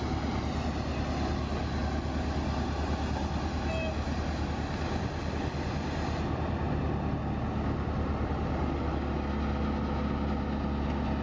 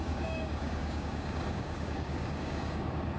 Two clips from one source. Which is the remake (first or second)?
second